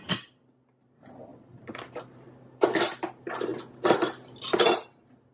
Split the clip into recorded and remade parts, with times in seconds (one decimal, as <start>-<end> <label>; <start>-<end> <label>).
0.0-5.3 recorded